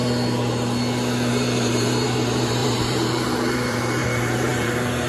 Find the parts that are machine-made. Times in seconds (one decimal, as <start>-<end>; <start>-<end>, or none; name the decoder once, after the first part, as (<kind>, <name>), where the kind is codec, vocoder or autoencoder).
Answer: 1.3-5.1 (vocoder, BigVGAN v2)